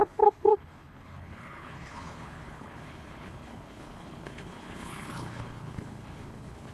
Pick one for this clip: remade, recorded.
remade